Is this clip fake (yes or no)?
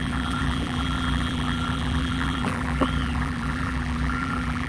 yes